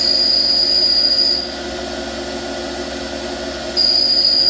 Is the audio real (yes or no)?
yes